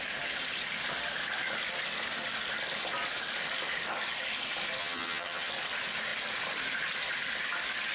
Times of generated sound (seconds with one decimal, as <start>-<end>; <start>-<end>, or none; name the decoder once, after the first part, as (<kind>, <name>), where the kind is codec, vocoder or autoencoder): 4.8-5.5 (vocoder, HiFi-GAN)